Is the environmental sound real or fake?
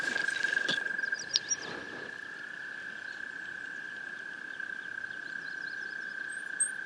real